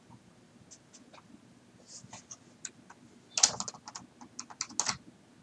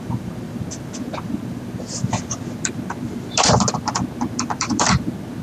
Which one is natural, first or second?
first